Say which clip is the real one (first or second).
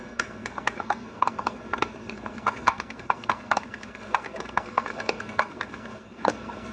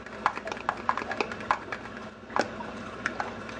second